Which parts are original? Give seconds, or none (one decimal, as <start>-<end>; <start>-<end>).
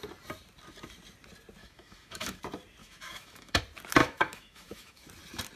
0.0-1.6; 2.4-2.8; 3.6-4.0; 5.1-5.6